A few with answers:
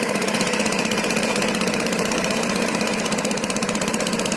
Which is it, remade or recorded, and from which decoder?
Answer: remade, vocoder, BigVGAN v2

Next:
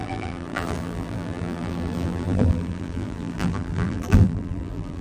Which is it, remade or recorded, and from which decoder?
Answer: remade, vocoder, BigVGAN v2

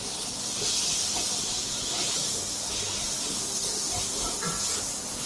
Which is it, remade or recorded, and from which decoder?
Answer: recorded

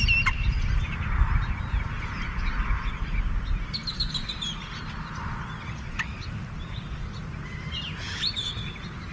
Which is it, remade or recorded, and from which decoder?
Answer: recorded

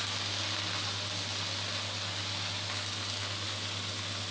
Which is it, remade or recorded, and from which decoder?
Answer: recorded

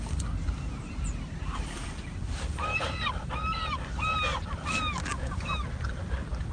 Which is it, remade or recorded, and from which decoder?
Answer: recorded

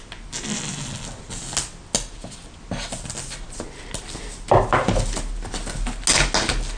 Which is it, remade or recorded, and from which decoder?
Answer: recorded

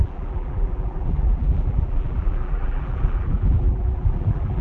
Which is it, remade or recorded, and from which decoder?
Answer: remade, vocoder, BigVGAN v2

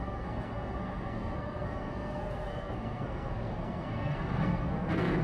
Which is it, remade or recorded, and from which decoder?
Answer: remade, codec, SNAC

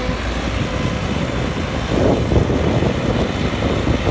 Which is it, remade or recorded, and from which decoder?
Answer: recorded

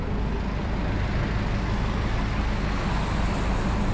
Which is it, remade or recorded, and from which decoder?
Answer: recorded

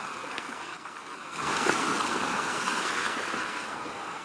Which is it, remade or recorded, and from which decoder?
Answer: remade, codec, SNAC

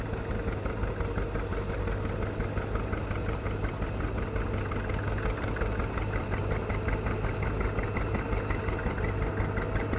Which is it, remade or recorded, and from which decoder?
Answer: recorded